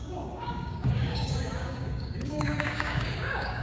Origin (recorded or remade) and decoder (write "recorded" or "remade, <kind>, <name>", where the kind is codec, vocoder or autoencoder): remade, codec, DAC